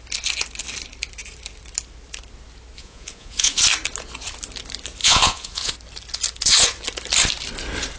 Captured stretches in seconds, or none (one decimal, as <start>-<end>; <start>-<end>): 0.0-2.8; 3.6-5.0; 5.7-8.0